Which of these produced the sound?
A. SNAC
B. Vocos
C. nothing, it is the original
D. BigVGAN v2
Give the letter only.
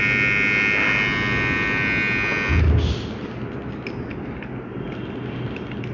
C